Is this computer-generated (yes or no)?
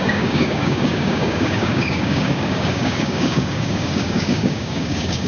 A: yes